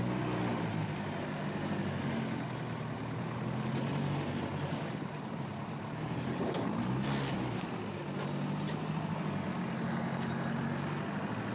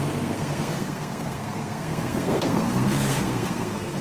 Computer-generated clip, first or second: second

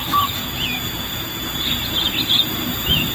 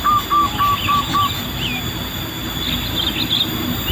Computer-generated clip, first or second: first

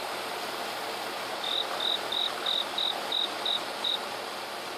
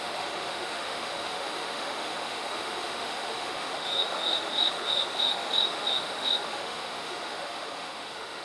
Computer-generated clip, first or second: second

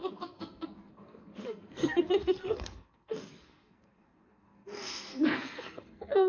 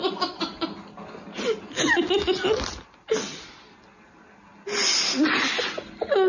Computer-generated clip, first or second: first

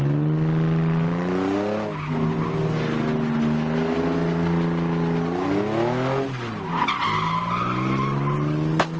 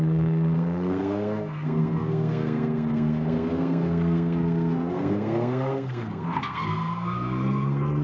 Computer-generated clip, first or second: second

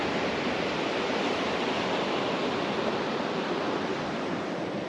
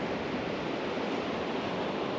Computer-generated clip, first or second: first